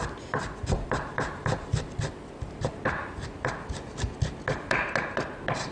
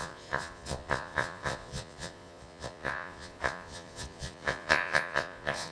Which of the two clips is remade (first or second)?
second